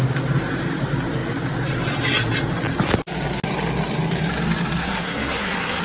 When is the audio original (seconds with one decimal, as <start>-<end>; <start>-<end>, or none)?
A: 0.0-4.8